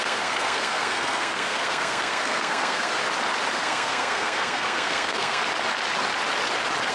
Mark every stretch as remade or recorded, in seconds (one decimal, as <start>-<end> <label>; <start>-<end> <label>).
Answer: 0.0-3.0 remade; 3.0-3.5 recorded; 3.5-5.4 remade; 5.4-6.9 recorded